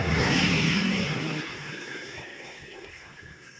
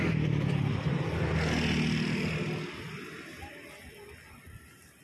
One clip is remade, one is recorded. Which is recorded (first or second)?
second